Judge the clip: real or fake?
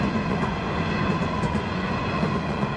fake